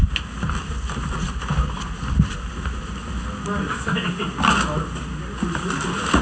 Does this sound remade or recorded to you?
recorded